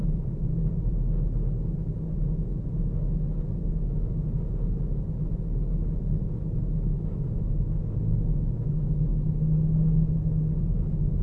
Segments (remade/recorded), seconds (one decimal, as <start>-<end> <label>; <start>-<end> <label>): 0.0-1.0 remade; 1.0-11.2 recorded